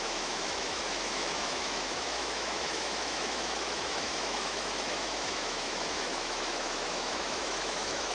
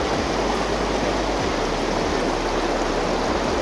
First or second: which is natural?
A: second